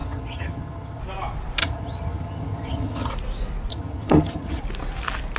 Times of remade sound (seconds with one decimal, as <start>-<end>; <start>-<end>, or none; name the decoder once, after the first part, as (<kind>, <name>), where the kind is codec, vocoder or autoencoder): 0.0-1.0 (vocoder, HiFi-GAN); 1.6-3.1; 3.7-4.6